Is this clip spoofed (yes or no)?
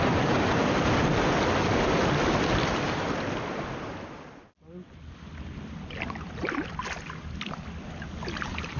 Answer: no